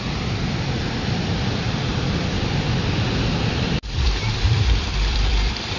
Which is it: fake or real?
fake